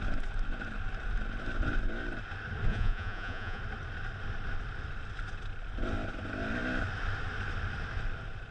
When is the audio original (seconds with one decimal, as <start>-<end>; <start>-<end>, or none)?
0.0-2.7; 3.6-8.5